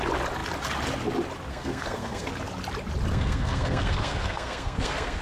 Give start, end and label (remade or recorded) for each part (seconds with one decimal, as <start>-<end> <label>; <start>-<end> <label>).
0.0-1.5 recorded; 1.5-2.3 remade; 2.3-3.1 recorded; 3.1-5.2 remade

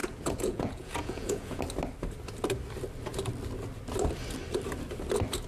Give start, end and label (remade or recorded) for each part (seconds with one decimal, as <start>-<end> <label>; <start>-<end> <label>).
0.0-1.6 remade; 1.6-5.5 recorded

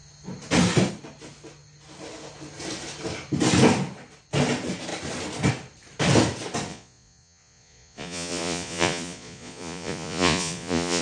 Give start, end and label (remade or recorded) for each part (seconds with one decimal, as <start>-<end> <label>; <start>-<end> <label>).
0.0-6.7 recorded; 6.7-11.0 remade

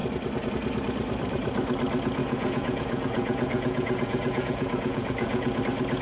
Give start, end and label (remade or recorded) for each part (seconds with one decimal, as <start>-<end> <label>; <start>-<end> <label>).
0.0-2.2 recorded; 2.2-5.6 remade; 5.6-6.0 recorded

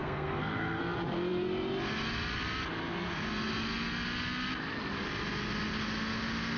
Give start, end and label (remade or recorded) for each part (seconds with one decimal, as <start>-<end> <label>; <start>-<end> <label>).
0.0-0.8 remade; 0.8-6.6 recorded

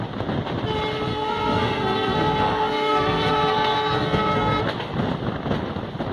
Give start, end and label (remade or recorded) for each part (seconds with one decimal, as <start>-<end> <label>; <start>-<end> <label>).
0.0-1.1 recorded; 1.1-4.6 remade; 4.6-6.1 recorded